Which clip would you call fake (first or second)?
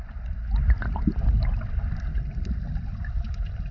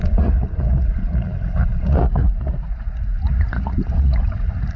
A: second